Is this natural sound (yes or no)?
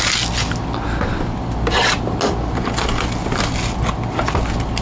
yes